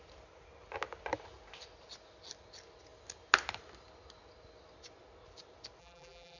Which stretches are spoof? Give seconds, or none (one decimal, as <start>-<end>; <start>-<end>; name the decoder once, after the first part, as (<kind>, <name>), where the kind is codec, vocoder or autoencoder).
5.8-6.4 (vocoder, BigVGAN v2)